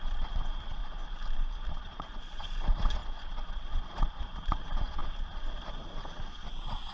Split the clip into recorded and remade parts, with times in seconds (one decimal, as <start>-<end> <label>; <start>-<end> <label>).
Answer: 0.0-0.8 remade; 0.8-1.7 recorded; 1.7-6.9 remade